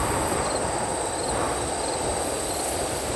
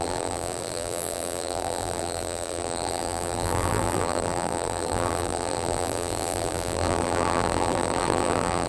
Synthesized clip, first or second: second